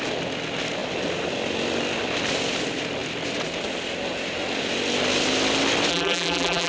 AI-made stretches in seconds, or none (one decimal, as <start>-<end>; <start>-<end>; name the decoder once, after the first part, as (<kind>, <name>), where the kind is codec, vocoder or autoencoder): 5.9-6.7 (vocoder, BigVGAN v2)